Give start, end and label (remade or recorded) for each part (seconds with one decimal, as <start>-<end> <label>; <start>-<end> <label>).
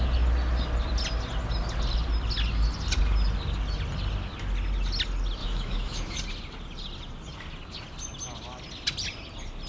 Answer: 0.0-5.4 recorded; 5.4-6.2 remade; 6.2-9.7 recorded